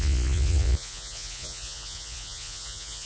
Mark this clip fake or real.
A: fake